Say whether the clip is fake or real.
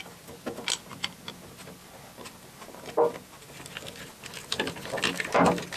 real